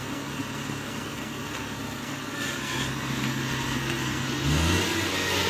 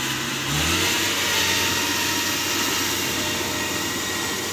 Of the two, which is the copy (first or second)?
first